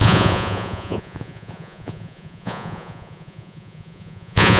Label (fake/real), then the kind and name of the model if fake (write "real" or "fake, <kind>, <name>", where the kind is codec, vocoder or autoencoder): fake, vocoder, Vocos